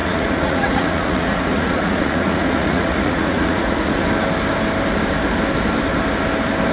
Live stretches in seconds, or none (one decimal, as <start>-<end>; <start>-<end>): 4.0-6.7